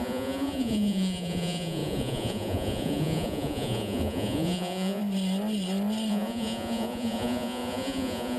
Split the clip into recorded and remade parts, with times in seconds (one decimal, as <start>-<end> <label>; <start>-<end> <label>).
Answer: 0.0-5.0 remade; 5.0-6.1 recorded; 6.1-8.4 remade